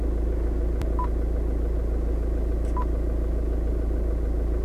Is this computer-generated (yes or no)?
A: no